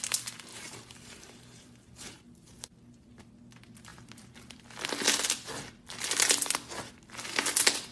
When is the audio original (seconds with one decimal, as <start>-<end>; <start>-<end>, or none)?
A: 0.0-0.5; 3.3-7.9